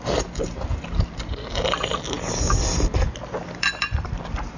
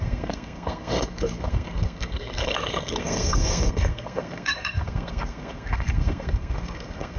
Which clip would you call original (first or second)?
first